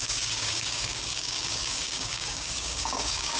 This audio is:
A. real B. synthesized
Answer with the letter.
B